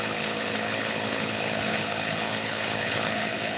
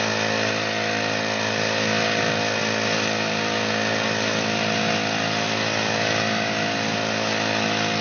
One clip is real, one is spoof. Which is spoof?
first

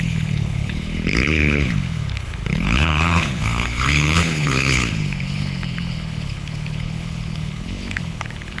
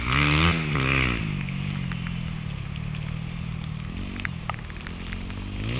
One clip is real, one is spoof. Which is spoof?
first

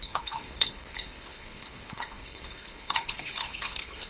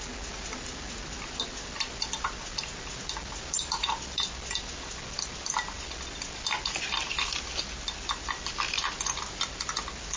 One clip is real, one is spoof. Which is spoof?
first